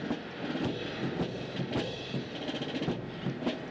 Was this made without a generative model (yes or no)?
yes